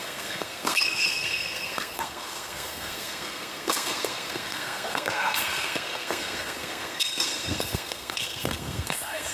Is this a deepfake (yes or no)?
yes